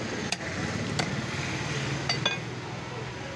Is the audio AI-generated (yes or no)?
no